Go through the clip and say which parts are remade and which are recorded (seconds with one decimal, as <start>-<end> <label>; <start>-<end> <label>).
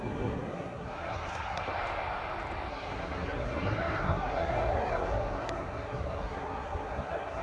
0.0-1.7 remade; 1.7-2.7 recorded; 2.7-7.4 remade